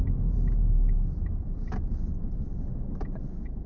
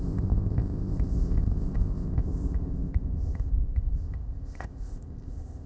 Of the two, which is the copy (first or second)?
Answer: second